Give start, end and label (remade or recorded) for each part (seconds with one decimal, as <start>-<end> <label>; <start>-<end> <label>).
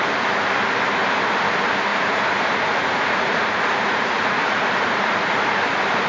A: 0.0-1.9 recorded; 1.9-5.6 remade; 5.6-6.1 recorded